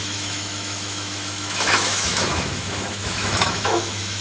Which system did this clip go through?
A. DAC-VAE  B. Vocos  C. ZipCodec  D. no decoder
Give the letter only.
A